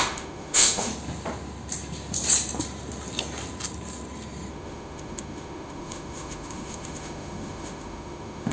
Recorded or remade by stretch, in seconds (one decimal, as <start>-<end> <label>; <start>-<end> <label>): 0.0-0.9 remade; 0.9-4.5 recorded; 4.5-8.5 remade